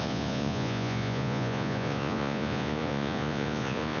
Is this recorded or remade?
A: remade